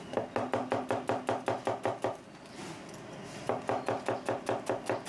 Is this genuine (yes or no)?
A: yes